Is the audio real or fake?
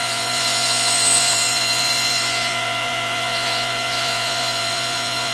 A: fake